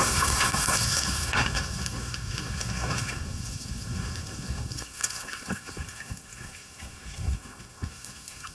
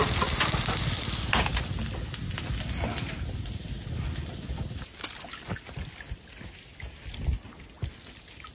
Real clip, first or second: second